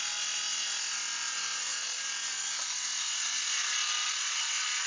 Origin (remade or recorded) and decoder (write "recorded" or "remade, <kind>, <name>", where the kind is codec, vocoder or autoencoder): recorded